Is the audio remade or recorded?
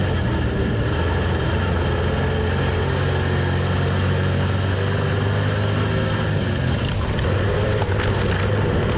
recorded